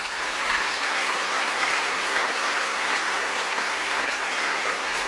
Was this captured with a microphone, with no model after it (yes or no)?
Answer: no